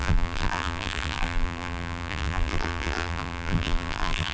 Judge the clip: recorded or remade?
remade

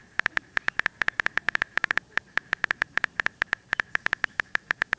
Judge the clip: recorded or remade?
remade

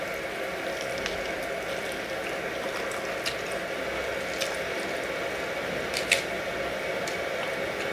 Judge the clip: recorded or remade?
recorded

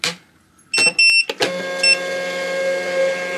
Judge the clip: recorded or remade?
recorded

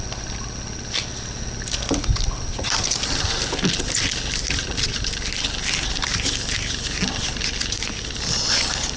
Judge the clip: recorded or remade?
recorded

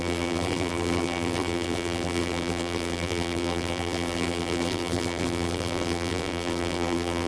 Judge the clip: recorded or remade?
remade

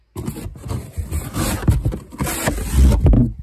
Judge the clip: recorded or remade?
recorded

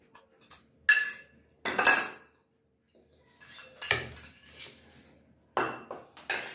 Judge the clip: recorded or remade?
recorded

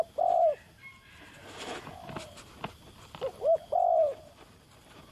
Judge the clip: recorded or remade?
recorded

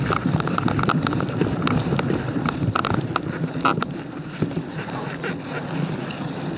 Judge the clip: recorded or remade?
remade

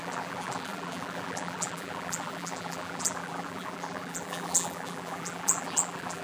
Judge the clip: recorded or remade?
remade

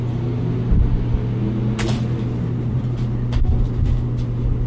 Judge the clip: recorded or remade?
recorded